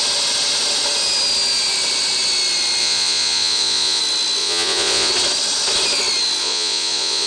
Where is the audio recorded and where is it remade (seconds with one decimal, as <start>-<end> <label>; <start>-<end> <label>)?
0.0-2.8 recorded; 2.8-4.0 remade; 4.0-4.4 recorded; 4.4-5.1 remade; 5.1-6.4 recorded; 6.4-7.3 remade